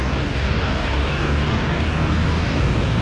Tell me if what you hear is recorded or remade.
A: remade